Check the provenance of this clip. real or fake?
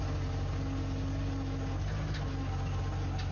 real